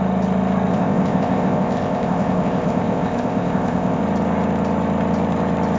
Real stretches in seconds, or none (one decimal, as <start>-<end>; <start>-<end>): 0.0-0.7; 4.0-5.8